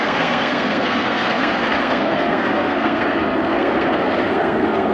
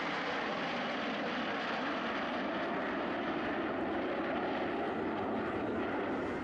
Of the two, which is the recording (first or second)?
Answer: second